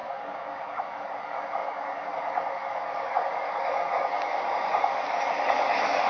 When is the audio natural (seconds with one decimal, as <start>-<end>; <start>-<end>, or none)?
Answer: none